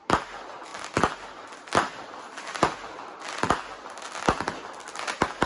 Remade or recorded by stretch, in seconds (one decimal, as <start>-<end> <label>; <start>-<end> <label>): 0.0-5.5 recorded